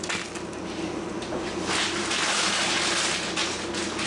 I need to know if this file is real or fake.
real